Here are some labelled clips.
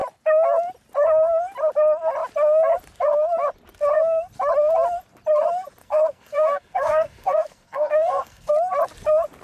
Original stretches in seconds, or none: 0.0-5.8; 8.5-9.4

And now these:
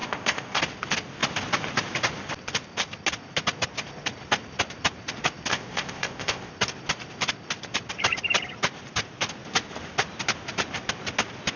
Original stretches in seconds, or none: 0.6-5.5; 6.5-11.6

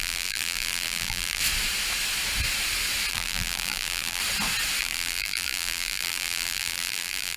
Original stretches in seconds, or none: 1.4-3.1; 4.2-4.8

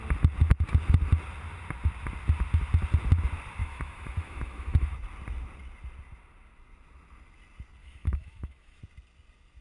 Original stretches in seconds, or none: 0.0-3.6; 4.9-7.8; 8.8-9.6

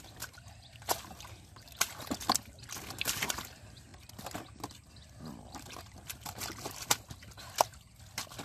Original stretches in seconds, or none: 0.0-8.4

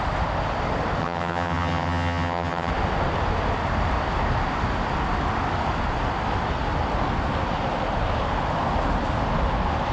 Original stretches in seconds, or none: 0.0-1.0; 2.7-9.9